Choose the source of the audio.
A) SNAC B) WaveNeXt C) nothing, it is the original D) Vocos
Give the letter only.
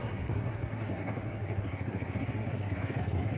A